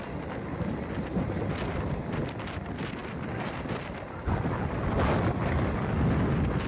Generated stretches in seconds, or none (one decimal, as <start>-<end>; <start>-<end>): none